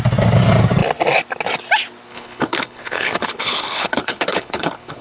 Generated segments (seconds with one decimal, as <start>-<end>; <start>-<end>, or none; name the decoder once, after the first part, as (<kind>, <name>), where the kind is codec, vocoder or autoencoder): 2.1-5.0 (codec, HILCodec)